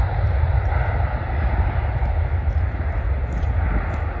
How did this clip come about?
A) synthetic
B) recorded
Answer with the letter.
B